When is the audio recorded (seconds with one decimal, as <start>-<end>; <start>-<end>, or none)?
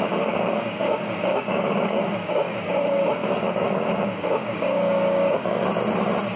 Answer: 5.6-6.4